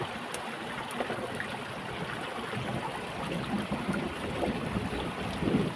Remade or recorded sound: recorded